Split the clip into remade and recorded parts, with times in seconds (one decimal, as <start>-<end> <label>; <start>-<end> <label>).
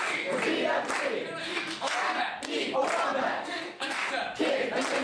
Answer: 0.0-0.5 remade; 0.5-1.4 recorded; 1.4-2.2 remade; 2.2-3.2 recorded; 3.2-4.1 remade; 4.1-5.0 recorded